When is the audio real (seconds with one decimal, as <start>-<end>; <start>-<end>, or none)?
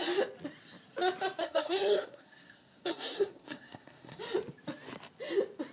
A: 0.0-1.4; 4.2-5.7